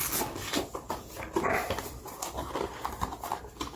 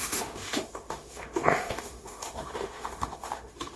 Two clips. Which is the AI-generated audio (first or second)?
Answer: second